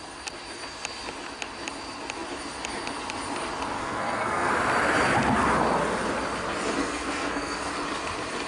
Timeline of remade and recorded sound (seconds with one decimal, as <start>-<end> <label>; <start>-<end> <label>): 0.0-3.8 recorded; 3.8-4.5 remade; 4.5-6.8 recorded; 6.8-7.7 remade; 7.7-8.5 recorded